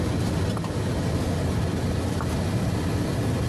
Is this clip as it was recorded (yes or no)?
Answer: yes